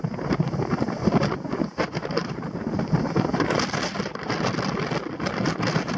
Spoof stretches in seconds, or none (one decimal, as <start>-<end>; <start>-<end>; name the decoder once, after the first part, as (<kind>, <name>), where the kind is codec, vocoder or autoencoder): none